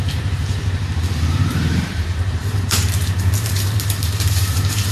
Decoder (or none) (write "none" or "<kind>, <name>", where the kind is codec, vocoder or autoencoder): vocoder, BigVGAN v2